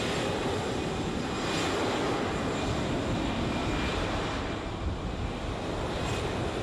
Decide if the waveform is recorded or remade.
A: recorded